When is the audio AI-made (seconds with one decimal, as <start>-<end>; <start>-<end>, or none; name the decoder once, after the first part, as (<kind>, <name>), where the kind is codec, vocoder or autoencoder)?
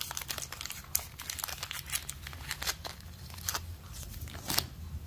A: 3.5-4.2 (vocoder, BigVGAN v2)